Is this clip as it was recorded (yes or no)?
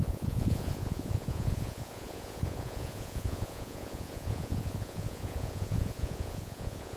no